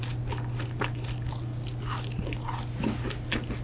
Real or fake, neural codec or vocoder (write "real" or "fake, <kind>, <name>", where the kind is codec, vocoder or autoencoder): real